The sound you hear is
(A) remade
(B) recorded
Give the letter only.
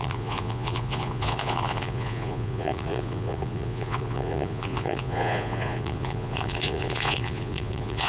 A